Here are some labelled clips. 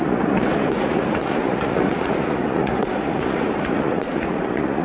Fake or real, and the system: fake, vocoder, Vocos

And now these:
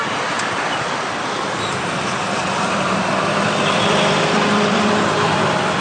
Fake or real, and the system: fake, vocoder, BigVGAN v2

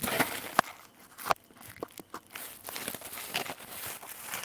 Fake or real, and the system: fake, vocoder, BigVGAN v2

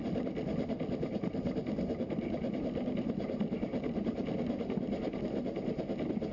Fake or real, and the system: real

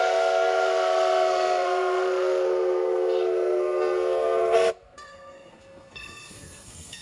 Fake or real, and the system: fake, codec, SNAC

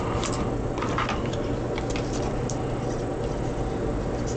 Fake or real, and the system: real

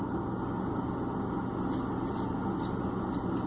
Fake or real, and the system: real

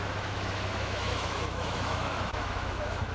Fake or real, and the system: fake, autoencoder, DAC-VAE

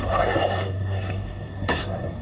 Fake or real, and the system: fake, codec, SNAC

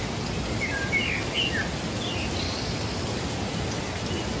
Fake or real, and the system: real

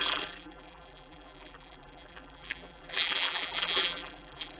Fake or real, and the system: fake, vocoder, BigVGAN v2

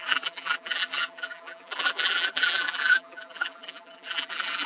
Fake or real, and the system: fake, vocoder, BigVGAN v2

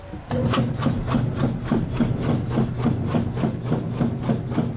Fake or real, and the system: real